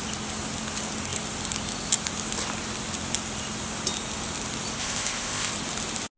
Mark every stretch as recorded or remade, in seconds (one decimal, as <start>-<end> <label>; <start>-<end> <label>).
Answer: 0.0-4.8 recorded; 4.8-5.5 remade; 5.5-6.2 recorded